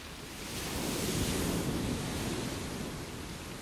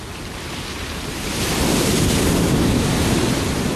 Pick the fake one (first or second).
second